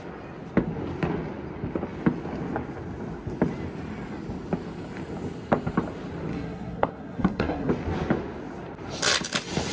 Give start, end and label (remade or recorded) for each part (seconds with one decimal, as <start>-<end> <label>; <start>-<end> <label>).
0.0-6.3 recorded; 6.3-7.7 remade; 7.7-9.7 recorded